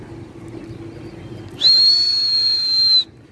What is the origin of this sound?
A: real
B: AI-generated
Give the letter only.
A